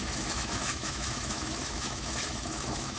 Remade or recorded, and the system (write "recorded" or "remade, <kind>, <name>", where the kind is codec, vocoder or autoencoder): remade, autoencoder, DAC-VAE